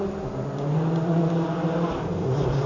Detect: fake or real real